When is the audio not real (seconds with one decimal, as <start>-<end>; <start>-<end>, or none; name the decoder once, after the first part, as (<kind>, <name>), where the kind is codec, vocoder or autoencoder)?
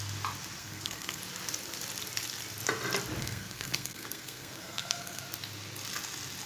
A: 0.6-1.2 (codec, SNAC); 3.2-5.2